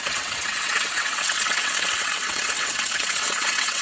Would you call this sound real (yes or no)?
no